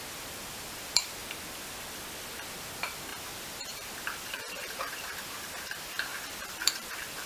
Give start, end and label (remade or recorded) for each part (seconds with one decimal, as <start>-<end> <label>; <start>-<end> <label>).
0.0-1.2 remade; 1.2-2.5 recorded; 2.5-7.3 remade